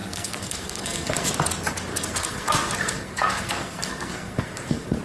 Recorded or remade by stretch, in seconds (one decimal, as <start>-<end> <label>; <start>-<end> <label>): 0.0-1.3 remade; 1.3-1.9 recorded; 1.9-5.0 remade